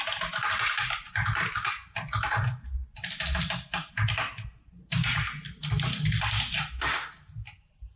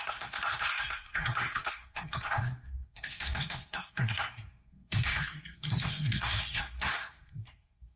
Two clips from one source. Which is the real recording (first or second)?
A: first